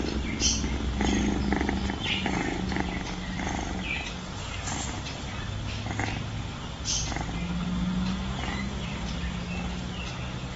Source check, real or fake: real